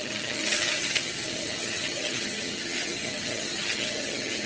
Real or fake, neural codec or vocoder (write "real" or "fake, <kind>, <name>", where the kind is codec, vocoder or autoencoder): fake, vocoder, HiFi-GAN